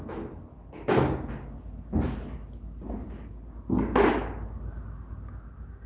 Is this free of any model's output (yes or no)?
yes